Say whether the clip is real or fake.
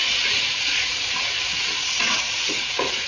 fake